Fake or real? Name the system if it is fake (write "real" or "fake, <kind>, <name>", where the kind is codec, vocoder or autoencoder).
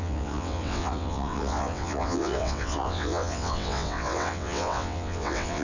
fake, vocoder, WaveNeXt